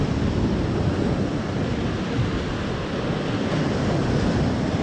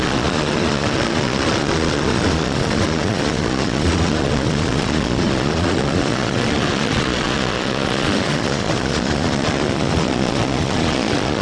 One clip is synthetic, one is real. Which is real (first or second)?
first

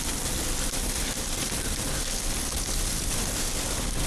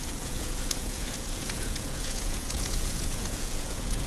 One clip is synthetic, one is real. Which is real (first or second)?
first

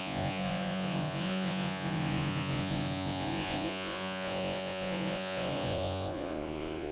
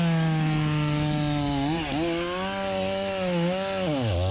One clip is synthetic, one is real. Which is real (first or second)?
second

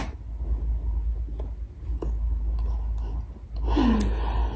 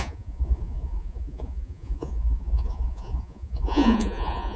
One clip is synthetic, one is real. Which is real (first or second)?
first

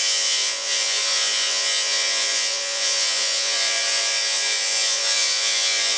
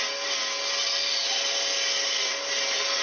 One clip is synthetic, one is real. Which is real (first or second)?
second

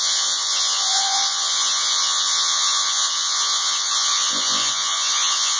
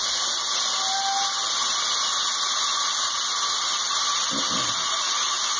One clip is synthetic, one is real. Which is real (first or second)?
second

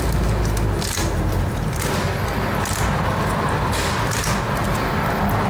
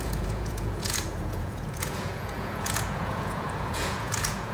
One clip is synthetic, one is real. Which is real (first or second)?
first